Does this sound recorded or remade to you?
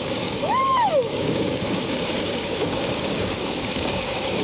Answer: remade